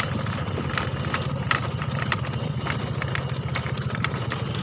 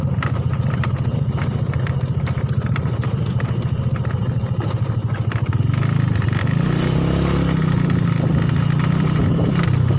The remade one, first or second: first